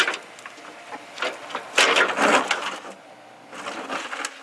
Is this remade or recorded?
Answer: recorded